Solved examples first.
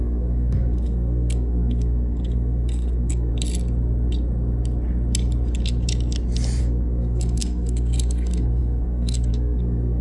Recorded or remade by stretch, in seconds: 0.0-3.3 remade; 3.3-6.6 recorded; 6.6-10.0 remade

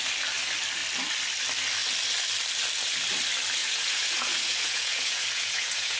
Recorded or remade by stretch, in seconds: 0.0-3.6 recorded; 3.6-6.0 remade

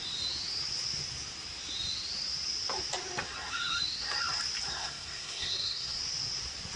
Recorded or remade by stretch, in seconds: 0.0-4.7 recorded; 4.7-6.0 remade; 6.0-6.8 recorded

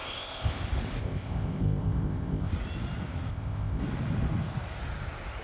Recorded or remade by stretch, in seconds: 0.0-0.6 remade; 0.6-1.0 recorded; 1.0-2.5 remade; 2.5-3.3 recorded; 3.3-3.8 remade; 3.8-5.4 recorded

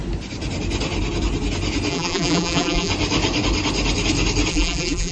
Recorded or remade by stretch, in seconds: 0.0-1.9 recorded; 1.9-2.9 remade; 2.9-4.5 recorded; 4.5-5.1 remade